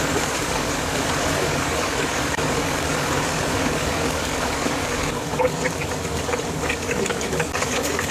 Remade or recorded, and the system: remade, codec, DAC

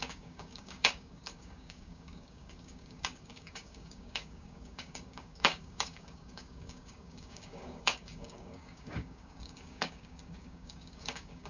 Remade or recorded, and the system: remade, codec, DAC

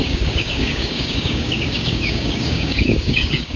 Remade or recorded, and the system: remade, codec, DAC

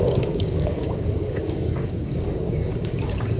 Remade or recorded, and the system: remade, codec, DAC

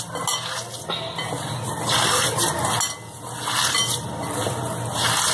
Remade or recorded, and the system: recorded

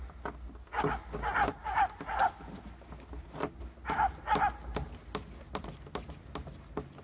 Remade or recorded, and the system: recorded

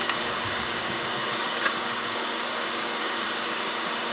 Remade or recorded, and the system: remade, codec, DAC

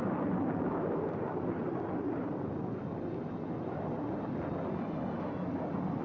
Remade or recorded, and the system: recorded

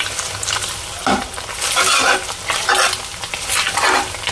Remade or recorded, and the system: recorded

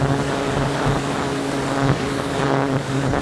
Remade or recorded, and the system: remade, codec, DAC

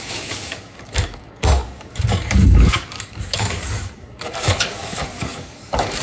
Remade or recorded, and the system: remade, codec, DAC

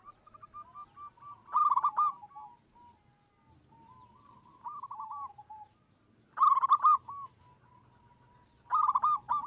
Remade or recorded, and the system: recorded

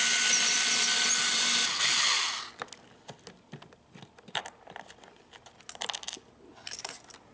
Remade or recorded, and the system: recorded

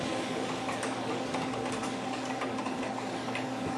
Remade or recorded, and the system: remade, codec, DAC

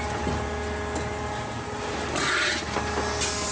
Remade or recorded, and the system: recorded